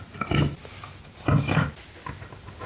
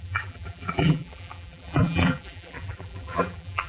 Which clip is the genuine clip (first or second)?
first